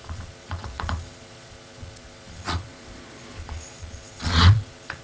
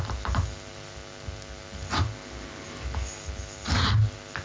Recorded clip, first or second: second